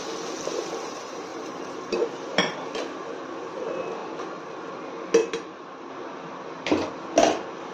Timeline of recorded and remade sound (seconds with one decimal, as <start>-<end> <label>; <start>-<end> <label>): 0.0-1.3 recorded; 1.3-2.7 remade; 2.7-5.2 recorded; 5.2-5.9 remade; 5.9-7.7 recorded

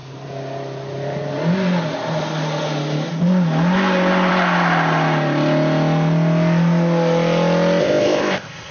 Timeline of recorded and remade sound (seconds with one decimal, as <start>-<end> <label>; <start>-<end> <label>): 0.0-7.8 recorded; 7.8-8.7 remade

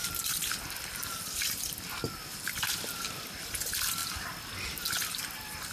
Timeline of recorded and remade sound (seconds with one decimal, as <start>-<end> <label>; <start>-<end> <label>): 0.0-5.7 recorded

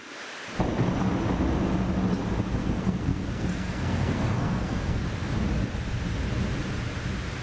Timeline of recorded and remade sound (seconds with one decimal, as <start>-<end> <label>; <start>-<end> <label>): 0.0-2.6 recorded; 2.6-5.0 remade; 5.0-7.4 recorded

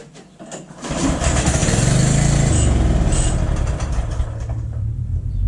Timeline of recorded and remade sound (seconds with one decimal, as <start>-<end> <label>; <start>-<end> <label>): 0.0-1.0 recorded; 1.0-1.6 remade; 1.6-4.5 recorded; 4.5-5.5 remade